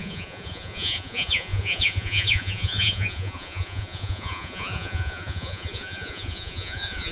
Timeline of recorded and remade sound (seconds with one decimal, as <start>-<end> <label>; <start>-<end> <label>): 0.0-7.1 remade

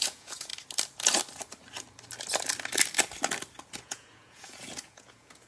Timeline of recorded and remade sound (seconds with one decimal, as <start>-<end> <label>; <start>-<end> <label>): 0.0-0.5 remade; 0.5-3.8 recorded; 3.8-5.5 remade

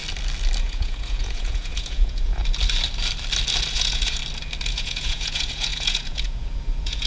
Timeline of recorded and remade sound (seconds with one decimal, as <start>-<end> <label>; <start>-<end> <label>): 0.0-0.6 recorded; 0.6-2.4 remade; 2.4-3.7 recorded; 3.7-4.2 remade; 4.2-4.7 recorded; 4.7-7.1 remade